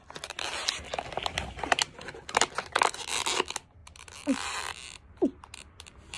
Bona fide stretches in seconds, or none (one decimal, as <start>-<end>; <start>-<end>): 0.0-6.2